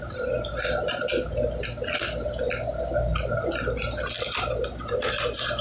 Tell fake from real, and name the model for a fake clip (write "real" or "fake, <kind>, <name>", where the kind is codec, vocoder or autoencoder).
real